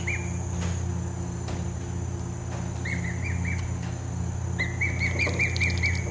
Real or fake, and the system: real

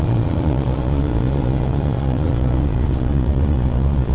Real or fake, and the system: fake, vocoder, Vocos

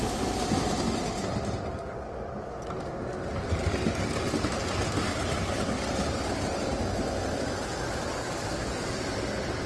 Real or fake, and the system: real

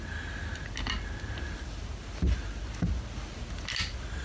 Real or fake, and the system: real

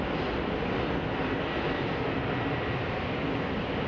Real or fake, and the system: real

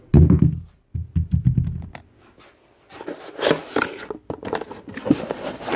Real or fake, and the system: real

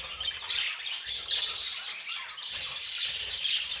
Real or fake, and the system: real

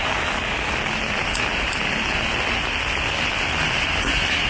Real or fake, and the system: real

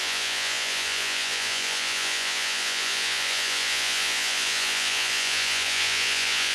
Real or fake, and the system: fake, vocoder, Vocos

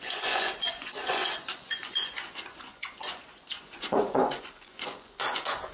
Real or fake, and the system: fake, vocoder, Vocos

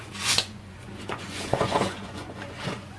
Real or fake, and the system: fake, vocoder, Vocos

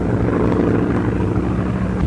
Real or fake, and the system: real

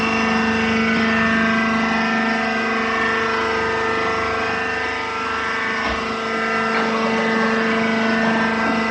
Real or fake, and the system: real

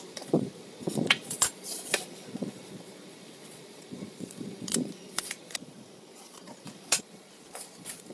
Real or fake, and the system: fake, vocoder, Vocos